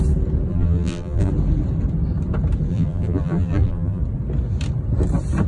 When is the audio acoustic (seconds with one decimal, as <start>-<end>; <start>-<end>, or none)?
0.0-0.5; 1.3-2.7; 4.0-5.5